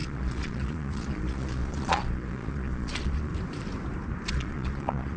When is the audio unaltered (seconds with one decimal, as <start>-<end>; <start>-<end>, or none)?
3.3-4.3